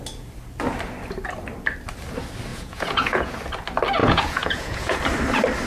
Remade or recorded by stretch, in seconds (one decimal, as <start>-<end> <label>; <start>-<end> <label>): 0.0-2.5 recorded; 2.5-3.3 remade; 3.3-4.0 recorded; 4.0-5.0 remade; 5.0-5.7 recorded